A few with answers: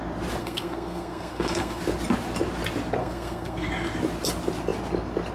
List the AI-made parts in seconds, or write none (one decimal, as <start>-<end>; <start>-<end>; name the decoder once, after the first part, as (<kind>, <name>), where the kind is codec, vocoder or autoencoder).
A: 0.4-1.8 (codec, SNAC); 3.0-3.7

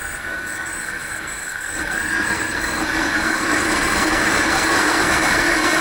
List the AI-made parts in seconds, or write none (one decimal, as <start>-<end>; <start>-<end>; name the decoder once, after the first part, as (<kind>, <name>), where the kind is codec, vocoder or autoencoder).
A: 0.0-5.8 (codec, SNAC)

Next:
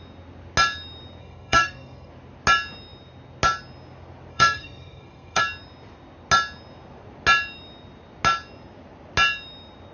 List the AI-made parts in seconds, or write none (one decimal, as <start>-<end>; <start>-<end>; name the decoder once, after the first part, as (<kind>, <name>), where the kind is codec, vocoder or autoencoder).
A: 1.2-2.1 (codec, SNAC); 4.3-5.4